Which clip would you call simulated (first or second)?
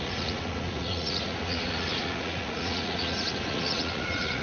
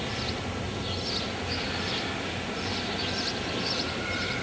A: first